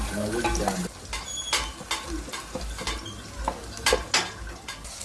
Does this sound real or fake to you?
real